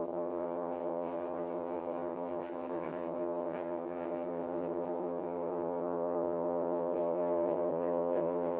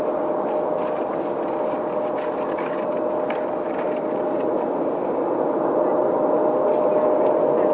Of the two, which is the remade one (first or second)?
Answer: first